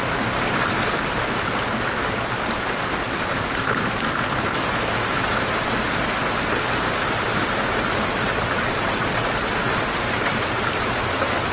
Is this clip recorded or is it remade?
recorded